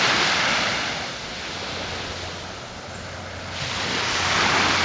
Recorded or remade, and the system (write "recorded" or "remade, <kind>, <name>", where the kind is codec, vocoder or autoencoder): recorded